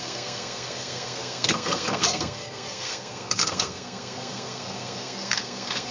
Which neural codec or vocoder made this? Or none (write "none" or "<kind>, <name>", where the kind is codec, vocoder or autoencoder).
codec, SNAC